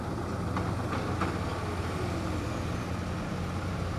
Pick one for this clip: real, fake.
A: real